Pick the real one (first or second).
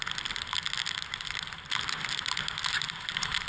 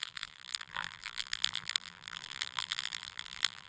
first